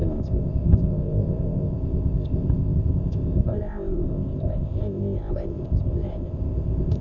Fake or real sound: fake